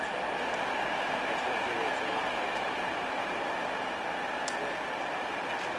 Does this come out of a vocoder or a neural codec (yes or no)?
no